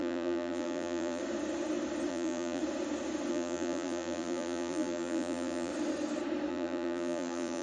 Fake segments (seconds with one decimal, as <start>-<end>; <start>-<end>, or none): 0.0-1.2; 2.1-2.6; 3.3-5.7; 6.5-7.6